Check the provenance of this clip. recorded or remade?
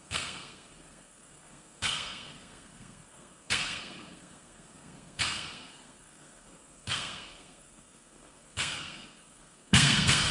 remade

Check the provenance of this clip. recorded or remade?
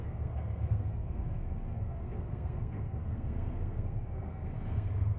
remade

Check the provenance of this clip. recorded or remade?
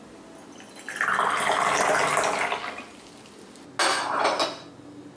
recorded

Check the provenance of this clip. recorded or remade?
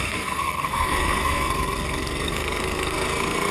remade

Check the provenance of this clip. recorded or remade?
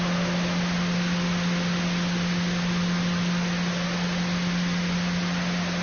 recorded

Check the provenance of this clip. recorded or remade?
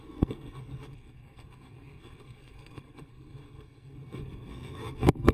remade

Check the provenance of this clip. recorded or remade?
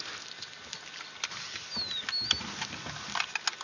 recorded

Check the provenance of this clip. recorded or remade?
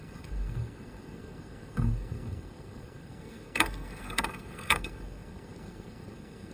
remade